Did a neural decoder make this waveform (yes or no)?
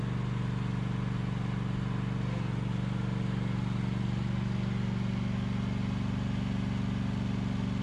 no